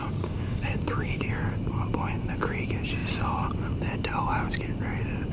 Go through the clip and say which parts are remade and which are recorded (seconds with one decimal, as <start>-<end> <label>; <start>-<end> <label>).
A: 0.0-1.3 remade; 1.3-5.3 recorded